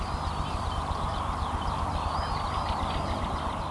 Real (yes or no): yes